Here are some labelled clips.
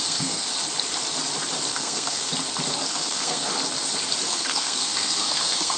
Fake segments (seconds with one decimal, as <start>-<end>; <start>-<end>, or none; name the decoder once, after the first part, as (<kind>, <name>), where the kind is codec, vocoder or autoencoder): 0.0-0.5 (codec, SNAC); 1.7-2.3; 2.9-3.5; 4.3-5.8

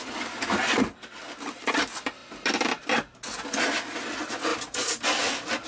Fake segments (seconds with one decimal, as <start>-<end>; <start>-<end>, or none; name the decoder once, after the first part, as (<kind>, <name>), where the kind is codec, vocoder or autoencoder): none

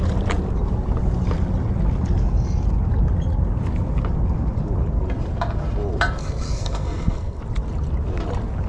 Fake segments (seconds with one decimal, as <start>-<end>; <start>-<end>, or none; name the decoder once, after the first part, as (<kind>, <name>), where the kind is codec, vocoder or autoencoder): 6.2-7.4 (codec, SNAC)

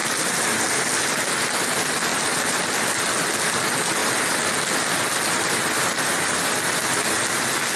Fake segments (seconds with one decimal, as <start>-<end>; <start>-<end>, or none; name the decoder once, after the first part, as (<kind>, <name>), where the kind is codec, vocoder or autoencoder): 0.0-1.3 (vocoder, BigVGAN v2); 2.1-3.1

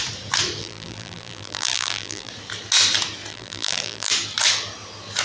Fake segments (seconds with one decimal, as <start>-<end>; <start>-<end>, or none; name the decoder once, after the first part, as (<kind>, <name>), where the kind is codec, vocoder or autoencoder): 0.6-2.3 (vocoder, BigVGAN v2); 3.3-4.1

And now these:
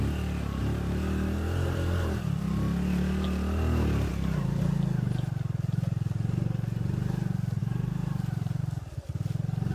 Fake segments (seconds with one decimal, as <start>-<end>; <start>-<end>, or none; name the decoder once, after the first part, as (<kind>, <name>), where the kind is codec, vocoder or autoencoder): 0.6-2.2 (vocoder, BigVGAN v2); 4.1-4.6; 7.6-8.6

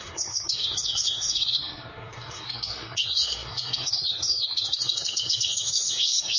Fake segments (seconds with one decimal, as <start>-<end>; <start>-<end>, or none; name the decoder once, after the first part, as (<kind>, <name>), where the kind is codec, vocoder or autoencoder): 0.0-6.4 (codec, SNAC)

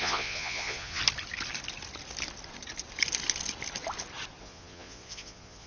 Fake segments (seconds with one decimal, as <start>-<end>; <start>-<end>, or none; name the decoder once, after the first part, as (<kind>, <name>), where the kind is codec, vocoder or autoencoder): 0.0-1.0 (vocoder, Vocos); 4.4-5.7